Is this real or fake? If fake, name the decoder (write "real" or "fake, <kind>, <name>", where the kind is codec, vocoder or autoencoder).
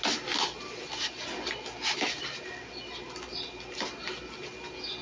real